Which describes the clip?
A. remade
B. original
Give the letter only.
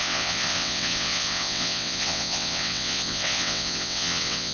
A